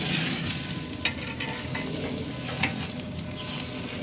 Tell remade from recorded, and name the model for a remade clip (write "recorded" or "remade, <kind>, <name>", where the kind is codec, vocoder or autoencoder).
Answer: recorded